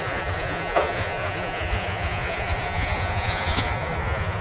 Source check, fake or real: fake